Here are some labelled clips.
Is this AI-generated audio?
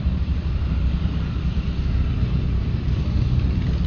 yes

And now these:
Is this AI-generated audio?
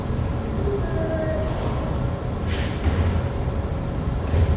no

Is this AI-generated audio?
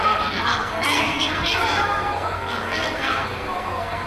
yes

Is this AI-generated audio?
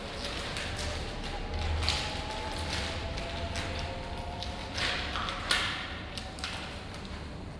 no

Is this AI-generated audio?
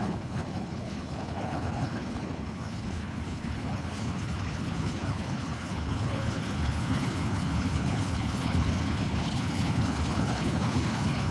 yes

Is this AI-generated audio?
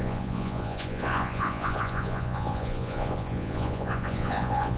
yes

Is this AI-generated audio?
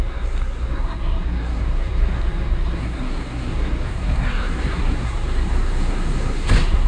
yes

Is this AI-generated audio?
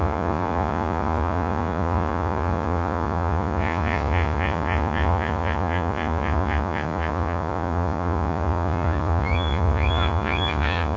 yes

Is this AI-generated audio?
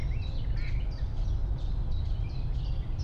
no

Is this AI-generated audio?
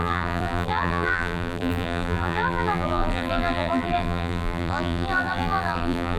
yes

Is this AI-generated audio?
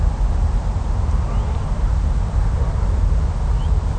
no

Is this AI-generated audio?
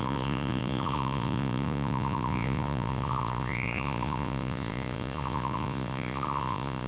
yes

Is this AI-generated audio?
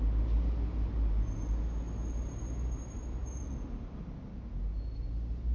no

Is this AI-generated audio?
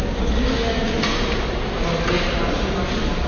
no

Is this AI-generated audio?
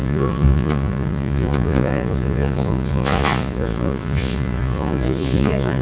yes